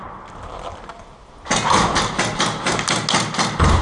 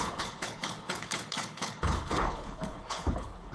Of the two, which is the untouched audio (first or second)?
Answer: first